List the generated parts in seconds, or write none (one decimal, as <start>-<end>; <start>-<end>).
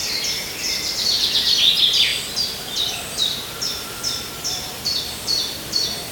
0.0-0.6; 2.1-2.8; 3.4-6.1